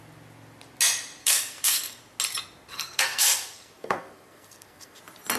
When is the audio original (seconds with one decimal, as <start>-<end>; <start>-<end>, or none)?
0.0-1.2; 2.0-2.7; 5.0-5.4